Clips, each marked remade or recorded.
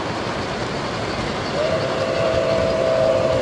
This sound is recorded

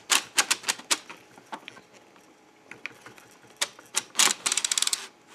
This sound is recorded